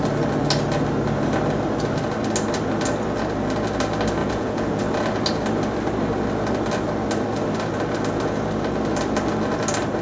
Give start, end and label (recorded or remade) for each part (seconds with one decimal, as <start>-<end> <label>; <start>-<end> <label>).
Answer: 0.0-4.2 recorded; 4.2-4.8 remade; 4.8-10.0 recorded